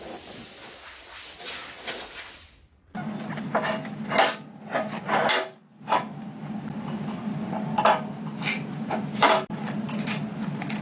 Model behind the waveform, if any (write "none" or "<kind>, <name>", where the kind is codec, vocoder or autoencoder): none